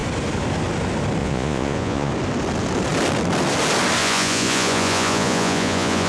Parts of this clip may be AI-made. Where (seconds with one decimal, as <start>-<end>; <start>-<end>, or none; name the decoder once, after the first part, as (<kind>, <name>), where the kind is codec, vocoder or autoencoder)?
1.2-2.1 (vocoder, Vocos); 4.0-6.1